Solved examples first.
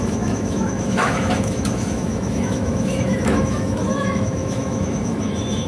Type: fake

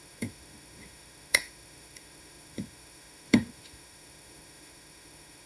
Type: fake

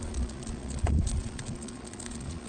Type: fake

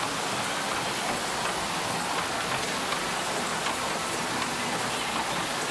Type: real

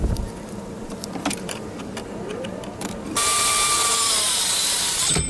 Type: fake